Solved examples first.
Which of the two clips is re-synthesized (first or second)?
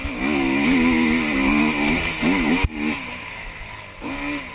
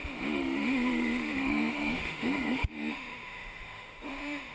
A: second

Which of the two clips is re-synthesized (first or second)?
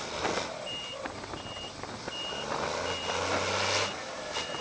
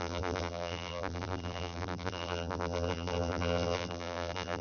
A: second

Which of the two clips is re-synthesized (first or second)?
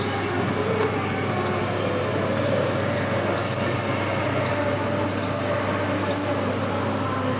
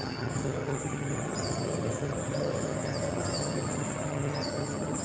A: second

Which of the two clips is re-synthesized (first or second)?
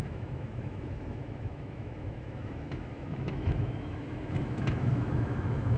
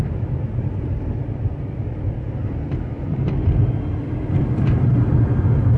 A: first